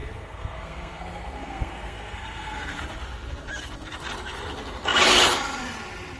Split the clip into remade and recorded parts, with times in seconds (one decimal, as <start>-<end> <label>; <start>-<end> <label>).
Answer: 0.0-2.8 remade; 2.8-6.2 recorded